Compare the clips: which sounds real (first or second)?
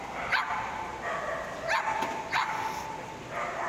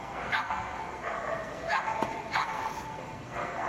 first